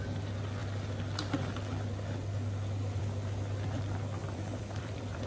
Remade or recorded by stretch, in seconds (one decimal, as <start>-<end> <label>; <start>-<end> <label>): 0.0-4.2 recorded; 4.2-5.3 remade